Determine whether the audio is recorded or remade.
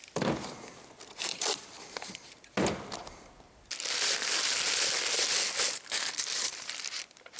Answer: recorded